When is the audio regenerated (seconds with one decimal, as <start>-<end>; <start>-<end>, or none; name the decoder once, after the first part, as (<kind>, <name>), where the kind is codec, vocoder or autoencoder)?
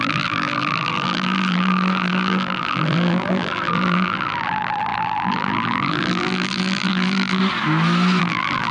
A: 0.0-7.4 (vocoder, BigVGAN v2); 8.2-8.7